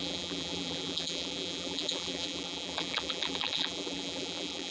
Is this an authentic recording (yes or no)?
no